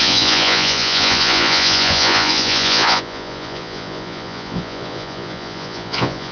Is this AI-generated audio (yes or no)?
yes